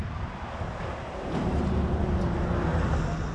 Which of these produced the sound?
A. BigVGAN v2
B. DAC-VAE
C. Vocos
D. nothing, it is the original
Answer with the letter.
D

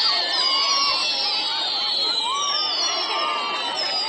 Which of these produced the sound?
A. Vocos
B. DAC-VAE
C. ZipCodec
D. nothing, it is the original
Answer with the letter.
D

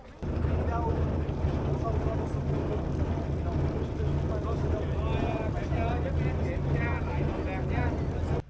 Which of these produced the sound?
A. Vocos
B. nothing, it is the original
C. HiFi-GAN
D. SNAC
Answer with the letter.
B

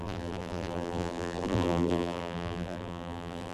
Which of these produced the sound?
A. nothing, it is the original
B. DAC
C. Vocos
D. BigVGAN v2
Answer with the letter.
D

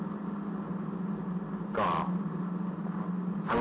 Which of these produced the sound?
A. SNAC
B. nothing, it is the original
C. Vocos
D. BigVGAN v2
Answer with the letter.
B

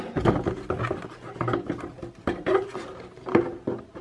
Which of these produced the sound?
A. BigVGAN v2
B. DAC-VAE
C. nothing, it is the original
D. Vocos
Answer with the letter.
C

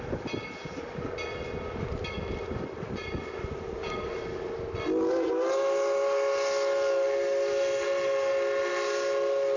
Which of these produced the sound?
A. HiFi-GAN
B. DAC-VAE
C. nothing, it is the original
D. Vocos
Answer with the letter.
C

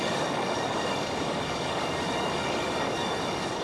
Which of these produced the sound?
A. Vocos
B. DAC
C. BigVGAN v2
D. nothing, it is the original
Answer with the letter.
B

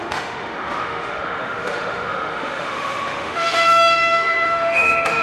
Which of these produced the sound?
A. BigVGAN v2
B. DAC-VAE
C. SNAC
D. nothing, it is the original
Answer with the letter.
B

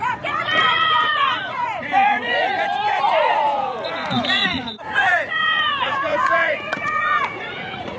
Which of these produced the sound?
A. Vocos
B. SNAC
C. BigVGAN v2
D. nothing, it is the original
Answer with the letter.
A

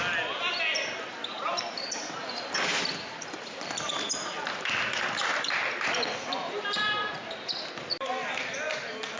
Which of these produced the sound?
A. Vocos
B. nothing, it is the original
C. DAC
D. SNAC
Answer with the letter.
B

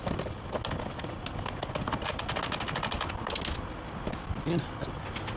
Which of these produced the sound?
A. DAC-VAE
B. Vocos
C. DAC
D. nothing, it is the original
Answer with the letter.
D